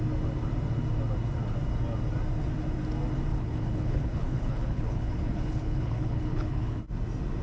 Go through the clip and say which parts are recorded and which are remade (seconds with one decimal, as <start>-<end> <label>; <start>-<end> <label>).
0.0-3.3 recorded; 3.3-6.8 remade; 6.8-7.4 recorded